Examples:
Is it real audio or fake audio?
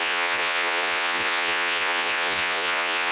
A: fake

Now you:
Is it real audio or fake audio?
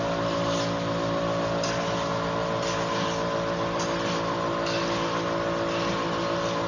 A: real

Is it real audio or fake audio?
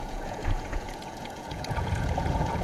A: fake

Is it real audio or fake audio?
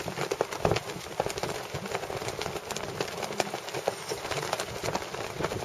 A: real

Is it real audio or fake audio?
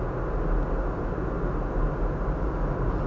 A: real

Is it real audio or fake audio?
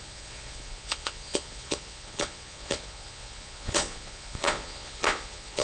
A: fake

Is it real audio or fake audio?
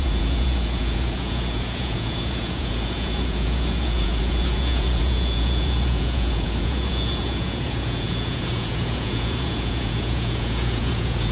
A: fake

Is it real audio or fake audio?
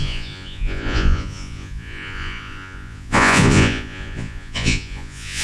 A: fake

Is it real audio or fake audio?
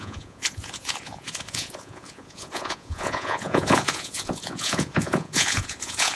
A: fake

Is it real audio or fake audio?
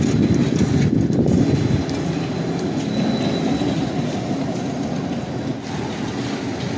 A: real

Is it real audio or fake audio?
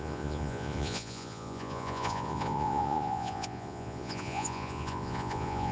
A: fake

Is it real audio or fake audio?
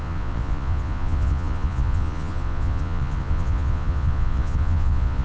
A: fake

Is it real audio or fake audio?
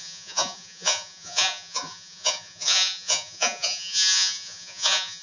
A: fake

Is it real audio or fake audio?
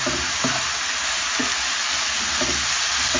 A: real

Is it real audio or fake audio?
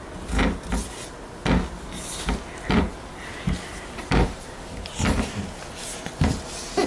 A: real